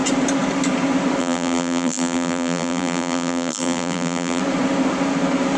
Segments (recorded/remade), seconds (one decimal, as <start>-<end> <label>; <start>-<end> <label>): 0.0-1.2 recorded; 1.2-4.4 remade; 4.4-5.6 recorded